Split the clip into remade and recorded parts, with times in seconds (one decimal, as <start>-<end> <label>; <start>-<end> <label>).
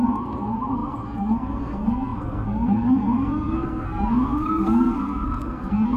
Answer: 0.0-6.0 remade